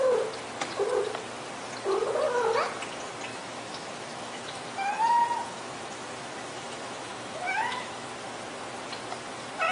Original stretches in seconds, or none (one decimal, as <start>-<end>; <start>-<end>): 0.0-3.3; 8.1-9.7